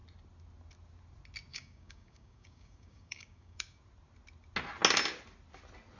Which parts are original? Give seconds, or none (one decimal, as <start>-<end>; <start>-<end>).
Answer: 0.0-1.5; 3.8-6.0